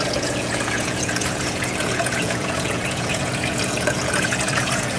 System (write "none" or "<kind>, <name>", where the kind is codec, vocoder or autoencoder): vocoder, Vocos